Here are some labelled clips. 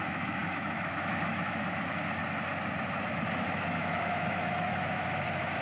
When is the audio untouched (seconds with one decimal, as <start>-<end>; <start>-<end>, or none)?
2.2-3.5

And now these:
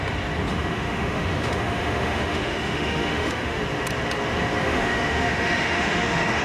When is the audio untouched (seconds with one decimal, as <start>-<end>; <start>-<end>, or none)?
0.0-0.5; 3.6-4.6

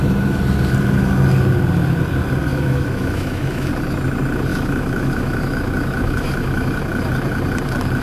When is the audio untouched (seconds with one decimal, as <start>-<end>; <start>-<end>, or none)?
0.0-2.5; 3.7-4.5; 6.8-8.0